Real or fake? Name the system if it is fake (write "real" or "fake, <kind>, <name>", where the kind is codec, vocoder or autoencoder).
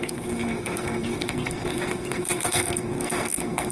fake, codec, SNAC